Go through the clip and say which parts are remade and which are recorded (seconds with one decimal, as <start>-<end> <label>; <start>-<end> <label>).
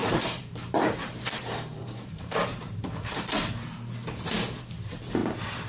0.0-3.4 remade; 3.4-5.7 recorded